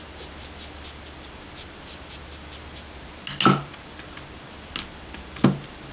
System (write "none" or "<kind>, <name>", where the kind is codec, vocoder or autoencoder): none